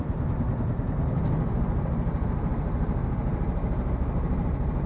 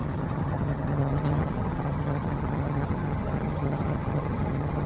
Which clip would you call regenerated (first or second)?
second